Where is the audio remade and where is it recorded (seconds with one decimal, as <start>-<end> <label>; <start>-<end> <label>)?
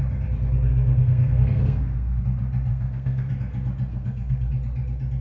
0.0-0.7 recorded; 0.7-2.2 remade; 2.2-2.7 recorded; 2.7-3.3 remade; 3.3-3.9 recorded; 3.9-4.5 remade; 4.5-5.2 recorded